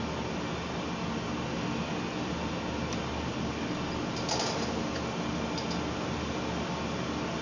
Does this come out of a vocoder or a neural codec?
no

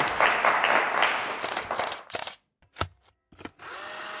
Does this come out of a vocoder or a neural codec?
no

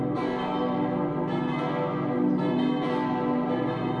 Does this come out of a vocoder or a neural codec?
no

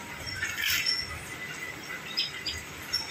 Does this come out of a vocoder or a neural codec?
no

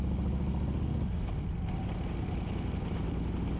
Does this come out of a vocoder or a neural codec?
no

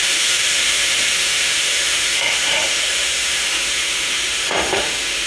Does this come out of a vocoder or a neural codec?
yes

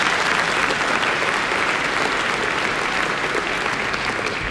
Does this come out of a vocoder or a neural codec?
no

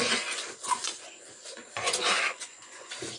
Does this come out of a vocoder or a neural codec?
yes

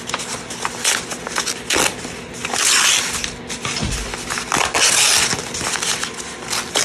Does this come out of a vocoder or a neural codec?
no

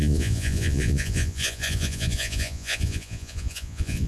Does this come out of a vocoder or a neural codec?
yes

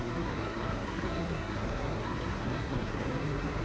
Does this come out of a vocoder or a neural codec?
yes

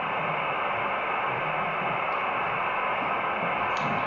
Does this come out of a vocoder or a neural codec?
no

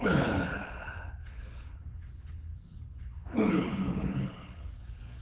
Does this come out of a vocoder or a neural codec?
yes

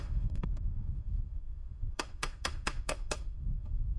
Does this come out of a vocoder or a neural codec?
yes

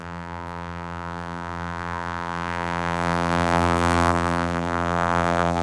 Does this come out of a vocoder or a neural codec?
yes